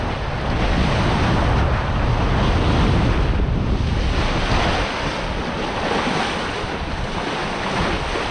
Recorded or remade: recorded